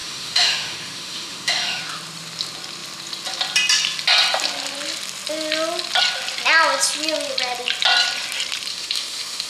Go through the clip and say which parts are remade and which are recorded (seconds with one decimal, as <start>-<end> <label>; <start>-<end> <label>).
0.0-1.8 remade; 1.8-8.7 recorded; 8.7-9.5 remade